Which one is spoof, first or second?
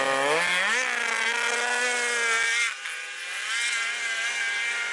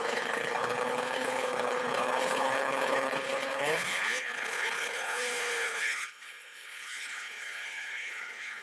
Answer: second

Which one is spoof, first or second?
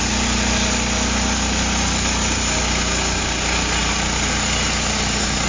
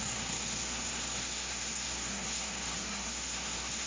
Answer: second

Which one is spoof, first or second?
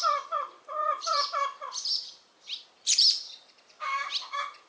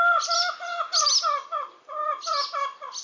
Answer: first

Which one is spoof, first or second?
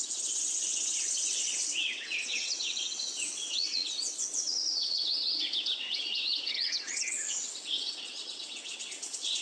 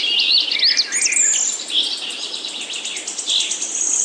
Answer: first